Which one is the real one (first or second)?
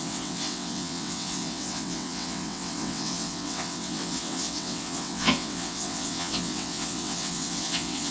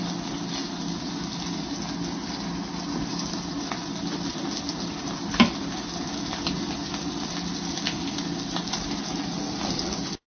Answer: second